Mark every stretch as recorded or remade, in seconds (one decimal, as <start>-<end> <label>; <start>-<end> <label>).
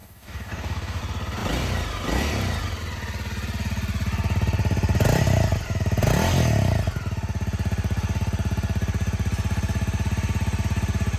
0.0-1.0 remade; 1.0-11.2 recorded